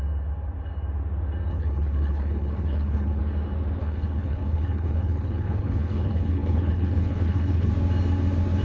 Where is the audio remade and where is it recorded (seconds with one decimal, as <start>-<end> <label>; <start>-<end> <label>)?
0.0-1.5 recorded; 1.5-3.2 remade; 3.2-3.8 recorded; 3.8-7.7 remade; 7.7-8.6 recorded